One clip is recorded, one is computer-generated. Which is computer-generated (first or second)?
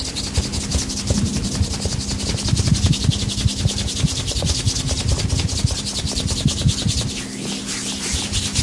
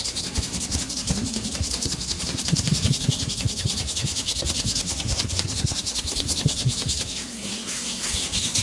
second